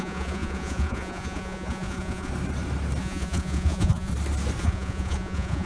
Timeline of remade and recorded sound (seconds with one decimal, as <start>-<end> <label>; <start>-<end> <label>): 0.0-2.3 remade; 2.3-3.0 recorded; 3.0-4.1 remade; 4.1-4.6 recorded; 4.6-5.7 remade